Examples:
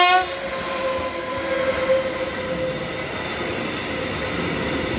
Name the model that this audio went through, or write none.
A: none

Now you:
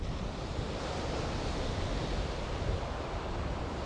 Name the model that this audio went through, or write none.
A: none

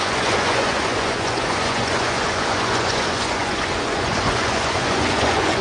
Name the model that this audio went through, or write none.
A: vocoder, Vocos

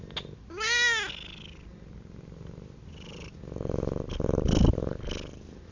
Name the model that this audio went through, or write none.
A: none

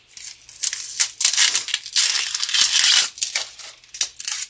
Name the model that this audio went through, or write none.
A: none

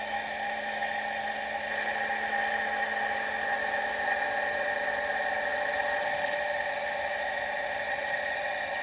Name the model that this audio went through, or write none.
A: none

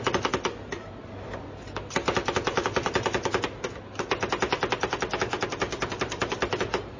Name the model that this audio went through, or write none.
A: none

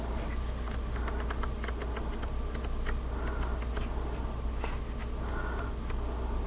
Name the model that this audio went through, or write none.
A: none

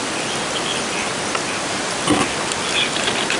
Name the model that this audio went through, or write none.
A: none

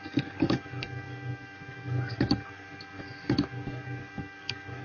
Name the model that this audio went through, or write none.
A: codec, DAC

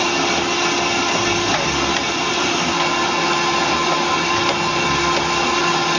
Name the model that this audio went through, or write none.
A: none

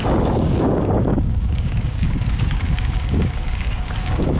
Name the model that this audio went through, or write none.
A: codec, DAC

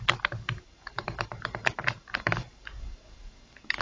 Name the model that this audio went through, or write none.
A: none